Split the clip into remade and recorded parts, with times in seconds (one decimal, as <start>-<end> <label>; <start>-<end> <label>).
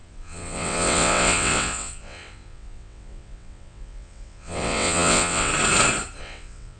0.0-5.5 remade; 5.5-6.2 recorded; 6.2-6.8 remade